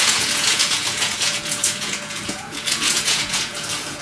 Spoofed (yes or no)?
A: yes